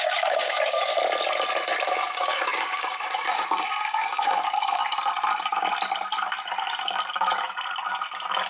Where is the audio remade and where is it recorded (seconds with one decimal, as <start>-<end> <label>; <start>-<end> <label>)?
0.0-0.9 remade; 0.9-1.9 recorded; 1.9-4.8 remade; 4.8-8.5 recorded